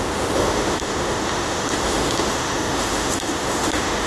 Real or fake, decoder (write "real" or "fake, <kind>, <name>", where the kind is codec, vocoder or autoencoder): fake, autoencoder, DAC-VAE